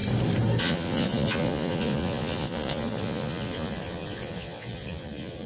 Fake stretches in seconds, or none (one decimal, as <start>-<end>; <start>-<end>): 0.6-5.5